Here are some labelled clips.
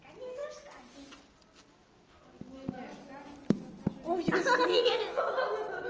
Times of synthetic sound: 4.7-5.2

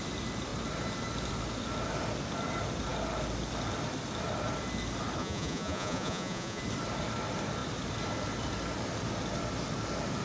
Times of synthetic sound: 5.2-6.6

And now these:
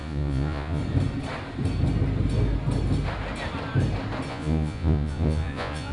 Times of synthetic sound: 0.0-0.8; 4.3-5.9

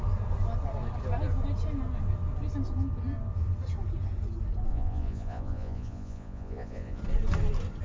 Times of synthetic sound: 4.7-7.0